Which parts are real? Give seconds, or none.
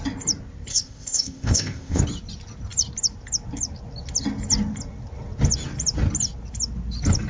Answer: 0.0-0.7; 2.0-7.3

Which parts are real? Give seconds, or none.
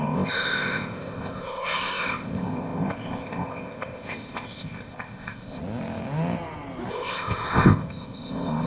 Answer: 5.6-6.9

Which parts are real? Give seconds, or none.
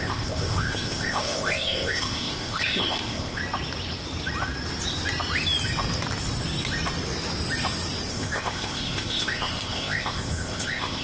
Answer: 3.4-8.1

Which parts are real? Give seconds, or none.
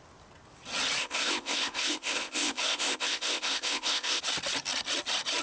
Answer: 0.0-1.0; 4.2-5.4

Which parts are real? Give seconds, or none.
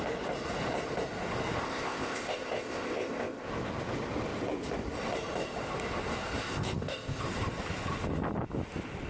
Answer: 0.0-1.6; 3.5-6.4; 7.2-9.1